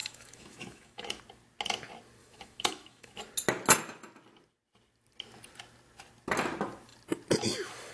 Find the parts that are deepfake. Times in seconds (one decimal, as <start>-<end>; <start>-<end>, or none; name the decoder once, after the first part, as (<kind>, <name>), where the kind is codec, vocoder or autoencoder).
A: 0.0-1.2 (autoencoder, DAC-VAE); 2.2-3.2